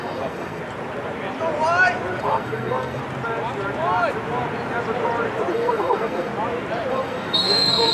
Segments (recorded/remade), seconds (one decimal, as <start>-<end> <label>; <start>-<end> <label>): 0.0-0.6 remade; 0.6-2.2 recorded; 2.2-3.0 remade; 3.0-5.5 recorded; 5.5-6.3 remade; 6.3-6.9 recorded; 6.9-7.9 remade